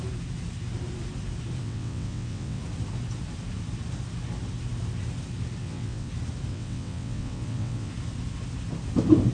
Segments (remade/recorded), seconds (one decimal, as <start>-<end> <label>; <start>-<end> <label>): 0.0-1.6 recorded; 1.6-2.6 remade; 2.6-5.6 recorded; 5.6-6.1 remade; 6.1-6.5 recorded; 6.5-7.9 remade; 7.9-9.3 recorded